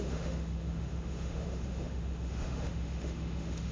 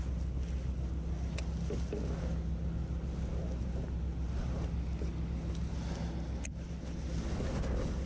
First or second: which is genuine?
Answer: second